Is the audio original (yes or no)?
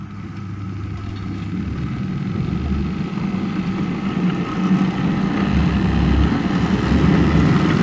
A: yes